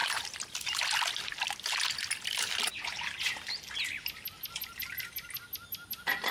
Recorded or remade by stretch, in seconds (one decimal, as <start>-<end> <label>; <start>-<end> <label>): 0.0-6.3 recorded